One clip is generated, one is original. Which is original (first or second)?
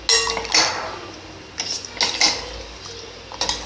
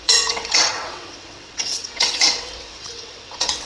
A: first